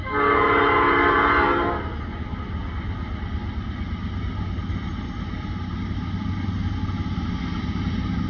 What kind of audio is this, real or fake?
real